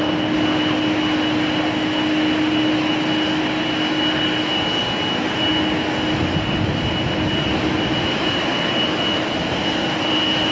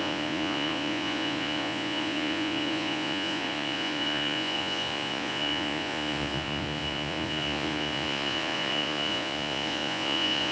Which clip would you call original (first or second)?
first